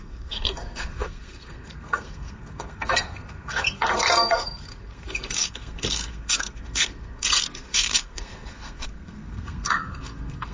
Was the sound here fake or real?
fake